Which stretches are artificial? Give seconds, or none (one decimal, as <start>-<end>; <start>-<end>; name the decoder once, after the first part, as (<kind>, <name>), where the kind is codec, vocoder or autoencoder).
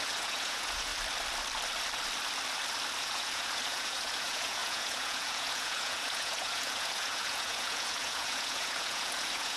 0.0-0.9 (vocoder, Vocos); 3.0-9.6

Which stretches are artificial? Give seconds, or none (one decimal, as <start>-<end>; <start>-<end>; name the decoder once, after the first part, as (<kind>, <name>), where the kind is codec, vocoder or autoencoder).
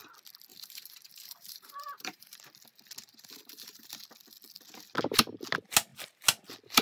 0.5-2.5 (vocoder, BigVGAN v2); 3.0-4.0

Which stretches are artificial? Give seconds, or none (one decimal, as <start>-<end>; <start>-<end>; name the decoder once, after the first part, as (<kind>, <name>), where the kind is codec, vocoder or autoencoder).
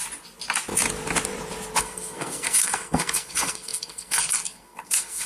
1.8-5.3 (codec, SNAC)